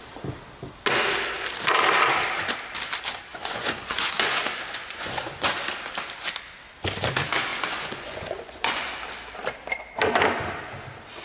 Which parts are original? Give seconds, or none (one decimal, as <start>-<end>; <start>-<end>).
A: 0.0-3.3; 5.5-7.5; 8.9-11.2